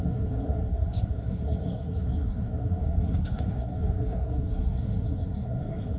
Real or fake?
fake